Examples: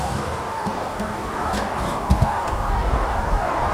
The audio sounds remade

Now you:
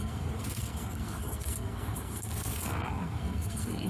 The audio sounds remade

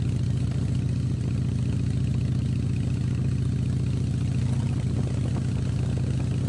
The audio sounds recorded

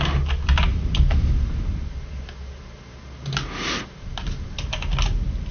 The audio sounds recorded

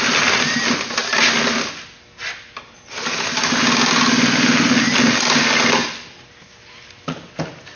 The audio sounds recorded